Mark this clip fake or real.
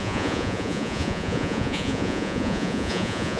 fake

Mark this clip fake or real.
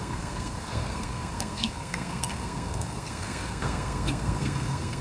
fake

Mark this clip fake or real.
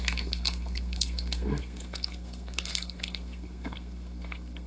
fake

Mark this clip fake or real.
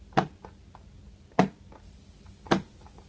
real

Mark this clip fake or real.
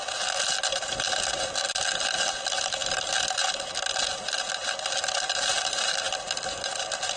real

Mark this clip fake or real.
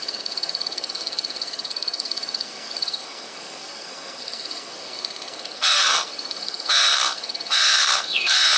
fake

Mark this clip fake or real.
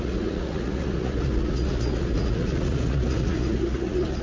fake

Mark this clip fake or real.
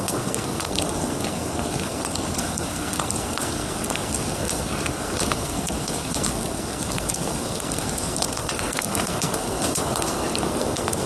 fake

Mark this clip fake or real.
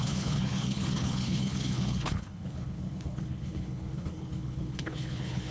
fake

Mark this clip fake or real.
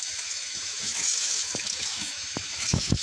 fake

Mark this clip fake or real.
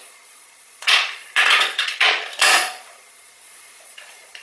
fake